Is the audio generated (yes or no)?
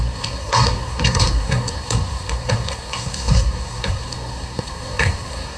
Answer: yes